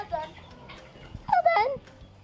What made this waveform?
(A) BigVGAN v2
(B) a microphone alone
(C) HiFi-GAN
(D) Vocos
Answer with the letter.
A